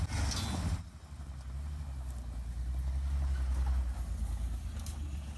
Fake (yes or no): no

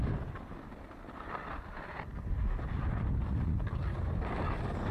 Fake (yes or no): no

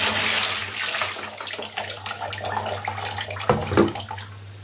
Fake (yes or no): no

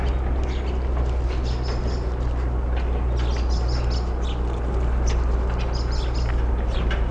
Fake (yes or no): no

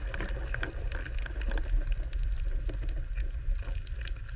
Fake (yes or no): no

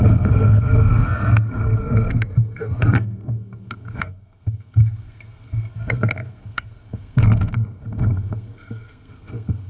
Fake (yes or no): yes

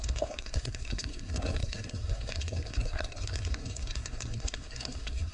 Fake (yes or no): yes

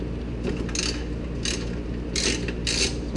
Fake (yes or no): no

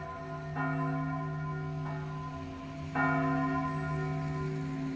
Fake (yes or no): no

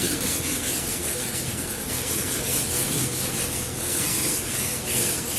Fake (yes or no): yes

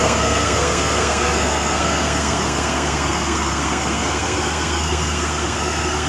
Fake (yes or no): yes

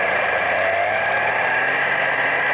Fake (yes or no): no